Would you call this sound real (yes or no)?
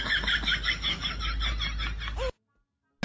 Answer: yes